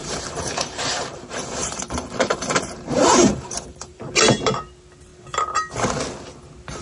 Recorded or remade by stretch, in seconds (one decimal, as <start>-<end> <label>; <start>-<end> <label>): 0.0-4.1 remade; 4.1-6.8 recorded